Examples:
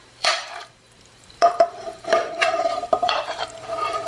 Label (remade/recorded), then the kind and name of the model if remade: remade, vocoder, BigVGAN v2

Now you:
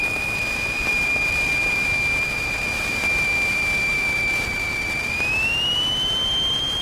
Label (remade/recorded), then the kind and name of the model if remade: remade, vocoder, BigVGAN v2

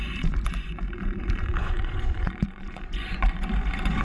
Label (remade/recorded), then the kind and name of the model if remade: remade, vocoder, Vocos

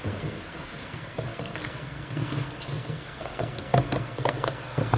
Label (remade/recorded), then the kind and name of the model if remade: remade, codec, SNAC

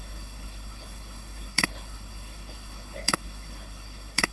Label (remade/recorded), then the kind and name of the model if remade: remade, codec, HILCodec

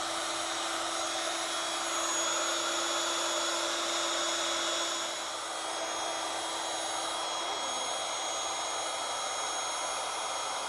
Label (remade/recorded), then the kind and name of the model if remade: recorded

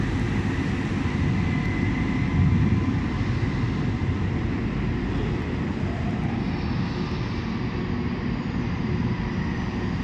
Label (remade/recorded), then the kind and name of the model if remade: recorded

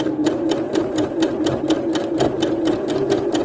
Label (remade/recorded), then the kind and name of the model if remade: recorded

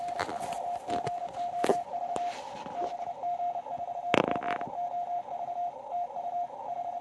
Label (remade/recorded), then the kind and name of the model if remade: recorded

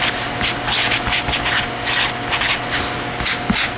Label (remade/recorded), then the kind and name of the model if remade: recorded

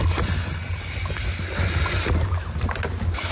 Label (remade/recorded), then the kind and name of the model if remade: recorded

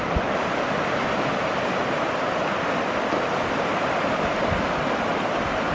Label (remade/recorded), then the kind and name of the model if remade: recorded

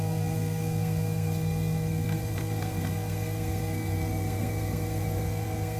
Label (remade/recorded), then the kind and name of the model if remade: remade, codec, SNAC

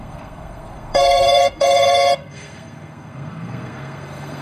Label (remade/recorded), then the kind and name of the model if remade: remade, codec, SNAC